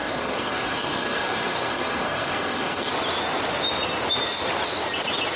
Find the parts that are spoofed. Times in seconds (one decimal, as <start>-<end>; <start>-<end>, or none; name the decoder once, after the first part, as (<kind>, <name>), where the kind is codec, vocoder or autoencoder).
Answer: 0.0-2.9 (codec, SNAC)